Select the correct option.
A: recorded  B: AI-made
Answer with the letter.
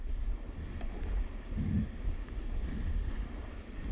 A